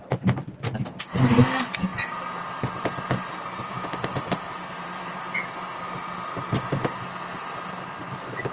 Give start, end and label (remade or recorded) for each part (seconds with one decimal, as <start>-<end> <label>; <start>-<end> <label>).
0.0-3.6 recorded; 3.6-5.2 remade; 5.2-8.5 recorded